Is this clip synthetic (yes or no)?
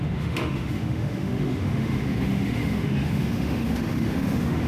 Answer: yes